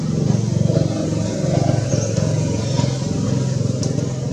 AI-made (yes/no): no